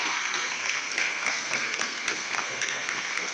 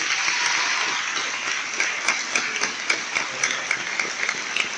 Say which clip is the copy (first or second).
first